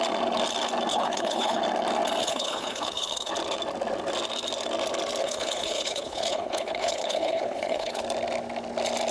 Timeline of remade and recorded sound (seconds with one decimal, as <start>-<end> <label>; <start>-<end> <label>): 0.0-0.9 recorded; 0.9-1.6 remade; 1.6-2.2 recorded; 2.2-3.3 remade; 3.3-5.2 recorded; 5.2-8.0 remade; 8.0-9.1 recorded